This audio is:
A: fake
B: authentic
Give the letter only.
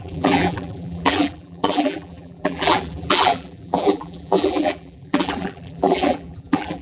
A